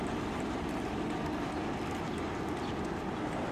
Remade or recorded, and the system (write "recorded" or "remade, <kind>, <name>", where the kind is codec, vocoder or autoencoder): recorded